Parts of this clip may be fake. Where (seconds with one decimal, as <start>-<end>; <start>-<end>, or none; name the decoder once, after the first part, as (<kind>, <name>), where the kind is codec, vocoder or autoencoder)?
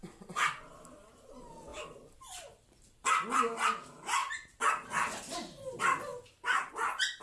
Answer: 1.7-3.4 (vocoder, BigVGAN v2); 4.2-4.7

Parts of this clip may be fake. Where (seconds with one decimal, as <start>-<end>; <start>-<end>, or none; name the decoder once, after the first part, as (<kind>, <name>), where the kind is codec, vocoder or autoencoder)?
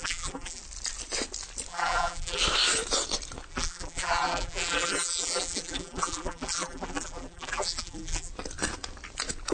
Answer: 0.0-0.6 (vocoder, BigVGAN v2); 1.7-2.4; 3.5-8.3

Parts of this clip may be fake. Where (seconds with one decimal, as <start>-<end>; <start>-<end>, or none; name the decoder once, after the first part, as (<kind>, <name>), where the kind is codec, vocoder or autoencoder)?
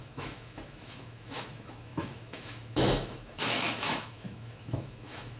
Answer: 0.0-5.4 (autoencoder, DAC-VAE)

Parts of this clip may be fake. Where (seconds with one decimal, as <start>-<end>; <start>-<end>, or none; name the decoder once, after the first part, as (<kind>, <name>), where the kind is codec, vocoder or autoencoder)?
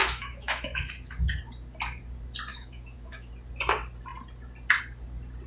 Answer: 0.0-1.3 (autoencoder, DAC-VAE); 2.5-3.3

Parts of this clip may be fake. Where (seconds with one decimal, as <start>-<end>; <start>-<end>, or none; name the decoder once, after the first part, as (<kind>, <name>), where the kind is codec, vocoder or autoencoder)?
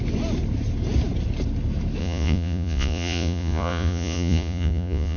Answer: 2.0-5.2 (vocoder, Vocos)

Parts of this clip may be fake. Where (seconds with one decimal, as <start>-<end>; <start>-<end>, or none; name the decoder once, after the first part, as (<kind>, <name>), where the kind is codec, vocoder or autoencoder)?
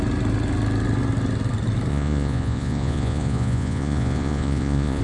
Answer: 1.9-5.0 (vocoder, Vocos)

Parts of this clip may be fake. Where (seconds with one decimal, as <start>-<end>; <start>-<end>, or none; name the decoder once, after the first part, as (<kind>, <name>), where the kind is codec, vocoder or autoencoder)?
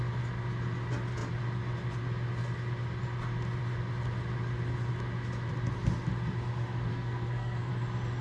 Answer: 6.9-7.7 (codec, SNAC)